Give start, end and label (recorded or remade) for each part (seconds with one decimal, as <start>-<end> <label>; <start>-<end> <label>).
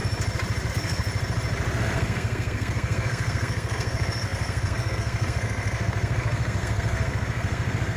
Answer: 0.0-0.7 recorded; 0.7-1.1 remade; 1.1-1.8 recorded; 1.8-8.0 remade